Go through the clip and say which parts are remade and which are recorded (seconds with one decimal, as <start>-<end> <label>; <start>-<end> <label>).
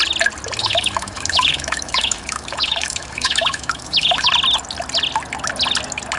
0.0-0.6 recorded; 0.6-4.3 remade; 4.3-6.2 recorded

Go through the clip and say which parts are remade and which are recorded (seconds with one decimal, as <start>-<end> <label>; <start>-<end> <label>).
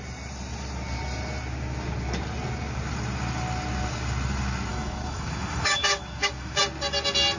0.0-4.7 recorded; 4.7-6.6 remade; 6.6-7.4 recorded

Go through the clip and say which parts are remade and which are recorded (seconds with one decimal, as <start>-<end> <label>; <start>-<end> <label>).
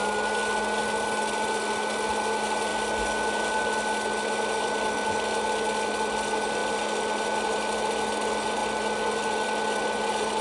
0.0-10.4 recorded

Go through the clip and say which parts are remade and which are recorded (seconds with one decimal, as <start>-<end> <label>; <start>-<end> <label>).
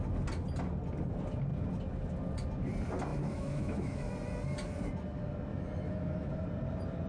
0.0-3.1 recorded; 3.1-4.1 remade; 4.1-5.5 recorded; 5.5-6.3 remade; 6.3-7.1 recorded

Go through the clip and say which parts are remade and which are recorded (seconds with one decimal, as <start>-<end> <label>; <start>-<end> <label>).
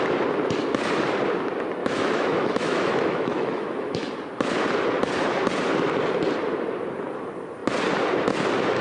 0.0-1.8 recorded; 1.8-4.1 remade; 4.1-8.8 recorded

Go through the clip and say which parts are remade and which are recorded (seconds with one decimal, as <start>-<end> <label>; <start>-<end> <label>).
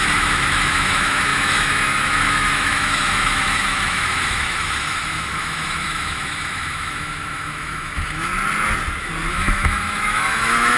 0.0-8.3 remade; 8.3-9.3 recorded; 9.3-10.8 remade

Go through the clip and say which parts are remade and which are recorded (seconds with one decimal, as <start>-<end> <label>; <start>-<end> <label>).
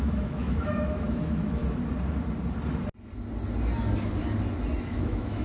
0.0-1.6 remade; 1.6-4.8 recorded; 4.8-5.4 remade